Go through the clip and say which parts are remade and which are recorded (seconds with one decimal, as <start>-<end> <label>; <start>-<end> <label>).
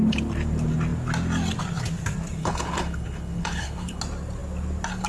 0.0-2.4 recorded; 2.4-4.0 remade; 4.0-5.1 recorded